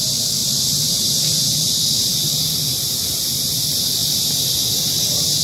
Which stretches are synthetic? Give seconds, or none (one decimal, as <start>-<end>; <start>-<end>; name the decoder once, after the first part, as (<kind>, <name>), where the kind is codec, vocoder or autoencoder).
0.4-3.6 (vocoder, BigVGAN v2)

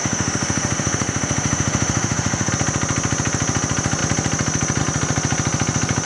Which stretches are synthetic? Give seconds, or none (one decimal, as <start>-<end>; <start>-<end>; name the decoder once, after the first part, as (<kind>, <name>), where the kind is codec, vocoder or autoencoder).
0.0-2.5 (autoencoder, DAC-VAE)

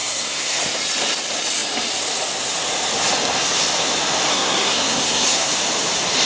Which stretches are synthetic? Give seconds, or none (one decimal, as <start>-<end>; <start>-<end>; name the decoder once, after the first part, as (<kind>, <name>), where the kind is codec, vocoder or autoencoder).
0.0-0.6 (codec, SNAC); 4.3-5.5

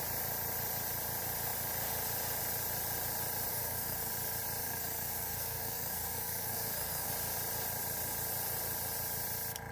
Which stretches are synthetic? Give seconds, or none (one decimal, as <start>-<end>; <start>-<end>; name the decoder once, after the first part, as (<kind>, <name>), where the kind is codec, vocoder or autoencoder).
3.5-4.1 (codec, SNAC); 4.6-7.1

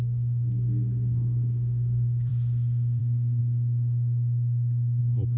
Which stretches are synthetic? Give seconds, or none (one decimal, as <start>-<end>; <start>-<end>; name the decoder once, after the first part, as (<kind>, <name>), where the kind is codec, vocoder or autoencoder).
0.0-2.3 (codec, DAC); 3.0-3.4; 5.0-5.4

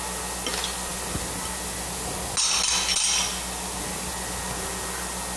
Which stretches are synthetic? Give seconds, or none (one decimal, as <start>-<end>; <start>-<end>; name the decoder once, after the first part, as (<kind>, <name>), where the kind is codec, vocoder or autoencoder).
none

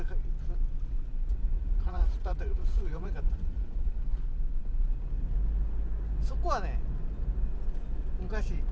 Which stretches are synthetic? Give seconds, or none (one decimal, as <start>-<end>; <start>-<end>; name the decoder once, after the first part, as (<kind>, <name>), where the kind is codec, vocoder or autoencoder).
1.3-4.0 (vocoder, Vocos)

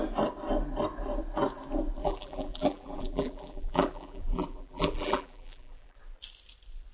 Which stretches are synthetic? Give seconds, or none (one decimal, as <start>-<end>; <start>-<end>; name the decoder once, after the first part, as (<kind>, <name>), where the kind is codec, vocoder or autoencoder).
2.0-6.0 (vocoder, BigVGAN v2)